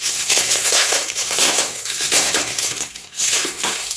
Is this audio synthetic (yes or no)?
yes